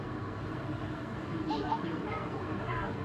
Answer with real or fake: fake